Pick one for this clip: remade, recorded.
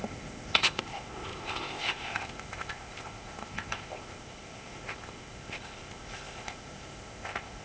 remade